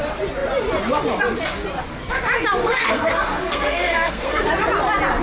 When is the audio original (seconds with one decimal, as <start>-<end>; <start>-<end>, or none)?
0.0-2.6; 4.5-5.2